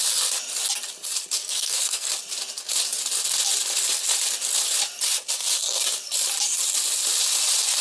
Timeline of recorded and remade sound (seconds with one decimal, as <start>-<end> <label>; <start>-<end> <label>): 0.0-1.4 recorded; 1.4-2.1 remade; 2.1-7.8 recorded